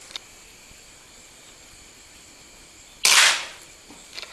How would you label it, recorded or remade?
recorded